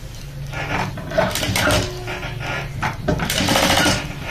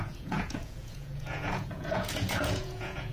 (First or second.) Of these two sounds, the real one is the first